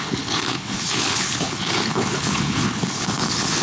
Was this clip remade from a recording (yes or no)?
yes